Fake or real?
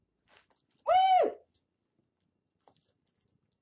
real